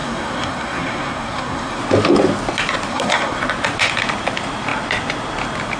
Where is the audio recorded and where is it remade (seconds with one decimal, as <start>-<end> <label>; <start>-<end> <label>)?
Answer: 0.0-1.8 remade; 1.8-2.9 recorded; 2.9-3.4 remade; 3.4-5.8 recorded